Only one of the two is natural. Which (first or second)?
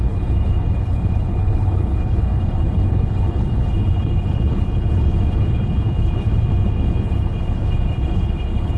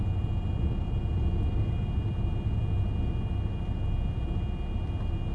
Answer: second